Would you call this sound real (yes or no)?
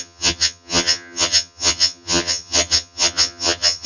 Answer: no